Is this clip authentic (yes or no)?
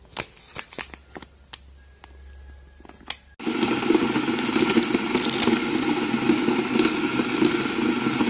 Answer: yes